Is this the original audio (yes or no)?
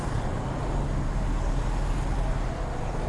yes